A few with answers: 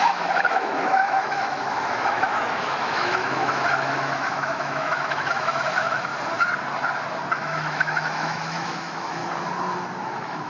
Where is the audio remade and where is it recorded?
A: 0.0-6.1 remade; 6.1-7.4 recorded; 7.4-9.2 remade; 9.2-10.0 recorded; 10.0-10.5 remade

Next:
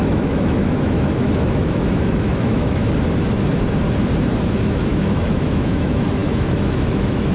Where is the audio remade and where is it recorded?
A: 0.0-2.8 remade; 2.8-4.6 recorded; 4.6-7.3 remade

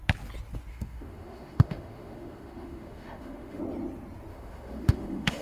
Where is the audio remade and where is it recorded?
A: 0.0-0.7 recorded; 0.7-3.6 remade; 3.6-4.3 recorded; 4.3-5.4 remade